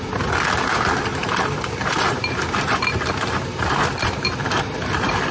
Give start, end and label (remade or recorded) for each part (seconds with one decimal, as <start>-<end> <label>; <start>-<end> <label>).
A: 0.0-1.1 recorded; 1.1-3.6 remade; 3.6-5.3 recorded